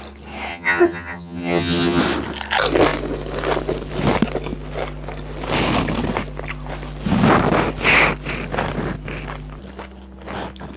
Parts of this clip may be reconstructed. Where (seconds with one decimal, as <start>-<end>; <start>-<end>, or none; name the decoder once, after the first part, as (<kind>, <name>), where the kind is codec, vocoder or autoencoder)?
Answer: 0.5-2.0 (vocoder, HiFi-GAN)